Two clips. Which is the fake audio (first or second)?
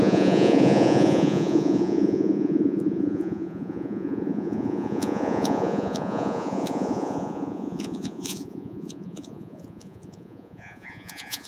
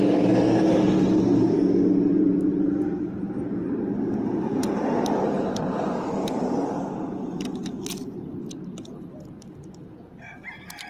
first